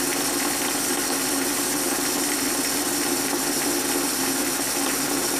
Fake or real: real